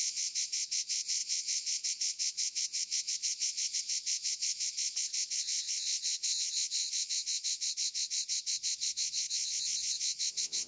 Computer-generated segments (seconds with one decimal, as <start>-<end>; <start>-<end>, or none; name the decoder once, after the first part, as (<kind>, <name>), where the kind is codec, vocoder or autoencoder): 0.0-10.7 (vocoder, Vocos)